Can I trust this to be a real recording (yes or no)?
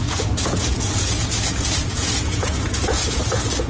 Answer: no